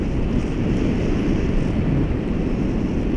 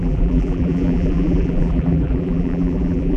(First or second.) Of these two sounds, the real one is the first